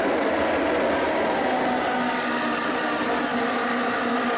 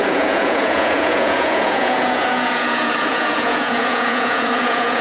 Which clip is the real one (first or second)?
first